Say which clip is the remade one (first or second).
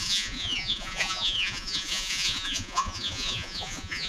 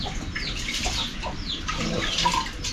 first